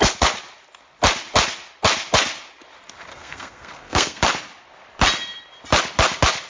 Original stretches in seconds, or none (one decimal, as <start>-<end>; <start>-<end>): 0.0-3.1; 4.2-6.5